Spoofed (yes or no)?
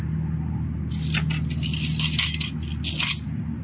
no